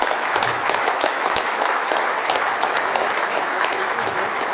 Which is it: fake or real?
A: fake